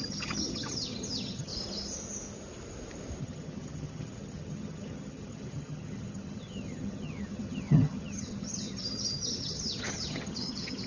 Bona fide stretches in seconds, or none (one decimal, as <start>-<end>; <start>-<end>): 1.5-3.2